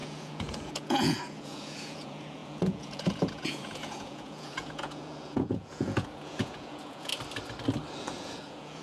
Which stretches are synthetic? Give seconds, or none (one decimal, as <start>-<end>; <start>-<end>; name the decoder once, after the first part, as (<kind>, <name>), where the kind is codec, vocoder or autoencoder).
0.0-7.1 (vocoder, Vocos); 8.0-8.8